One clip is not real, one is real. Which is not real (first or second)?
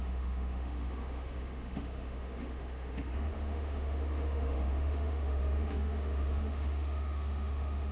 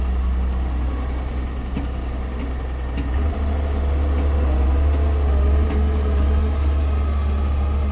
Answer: first